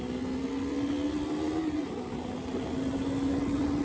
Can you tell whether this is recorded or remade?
recorded